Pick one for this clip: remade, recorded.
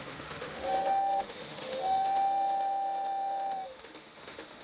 remade